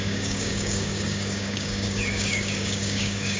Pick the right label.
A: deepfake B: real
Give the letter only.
A